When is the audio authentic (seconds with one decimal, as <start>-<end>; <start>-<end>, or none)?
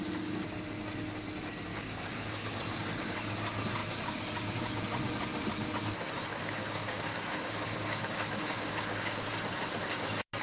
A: 0.0-1.7; 2.6-6.3; 9.3-10.4